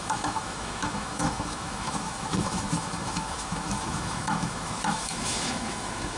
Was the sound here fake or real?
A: fake